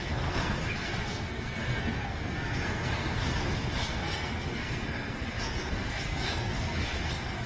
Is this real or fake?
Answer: fake